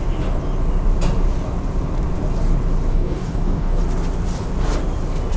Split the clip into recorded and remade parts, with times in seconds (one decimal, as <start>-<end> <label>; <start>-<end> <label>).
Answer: 0.0-2.9 recorded; 2.9-3.8 remade; 3.8-5.4 recorded